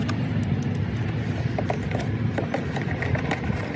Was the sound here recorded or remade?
recorded